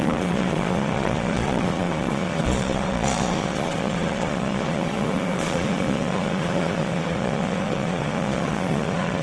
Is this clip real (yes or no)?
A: no